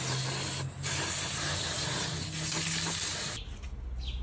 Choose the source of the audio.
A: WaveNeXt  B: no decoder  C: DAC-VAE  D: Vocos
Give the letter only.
B